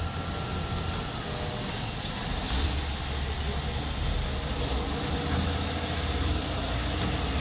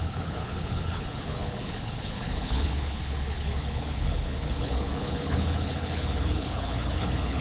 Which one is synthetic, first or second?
second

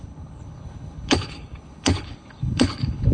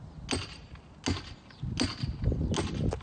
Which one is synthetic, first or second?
first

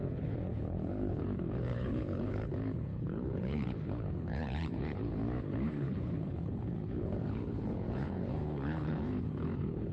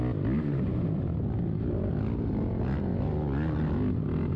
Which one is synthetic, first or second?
first